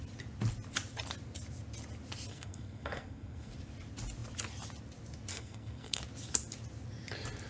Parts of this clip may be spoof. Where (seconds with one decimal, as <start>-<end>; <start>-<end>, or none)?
2.3-3.5; 5.3-6.0